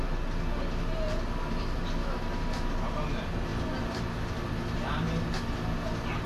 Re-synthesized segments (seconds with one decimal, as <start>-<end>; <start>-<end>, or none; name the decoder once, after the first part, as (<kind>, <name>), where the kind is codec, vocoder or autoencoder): 2.0-2.7 (autoencoder, DAC-VAE)